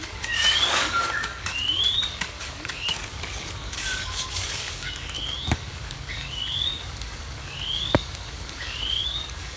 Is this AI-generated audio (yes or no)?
yes